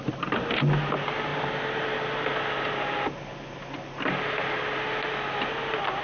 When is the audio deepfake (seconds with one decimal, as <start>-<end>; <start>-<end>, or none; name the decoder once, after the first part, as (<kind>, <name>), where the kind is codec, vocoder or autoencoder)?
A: none